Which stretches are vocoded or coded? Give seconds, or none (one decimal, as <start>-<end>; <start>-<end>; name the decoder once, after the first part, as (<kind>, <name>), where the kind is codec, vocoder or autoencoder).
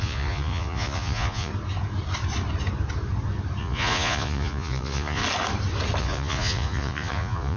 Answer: 0.0-1.5 (vocoder, Vocos); 3.6-5.2; 6.0-7.6